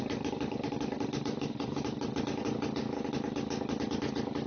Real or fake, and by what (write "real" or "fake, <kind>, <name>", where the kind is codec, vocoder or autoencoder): real